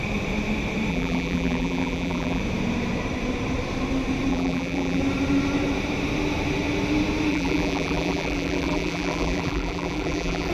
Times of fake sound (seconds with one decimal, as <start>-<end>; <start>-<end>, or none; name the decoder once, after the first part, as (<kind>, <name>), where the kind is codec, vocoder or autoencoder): 0.9-2.4 (vocoder, BigVGAN v2); 4.3-5.0; 7.3-10.5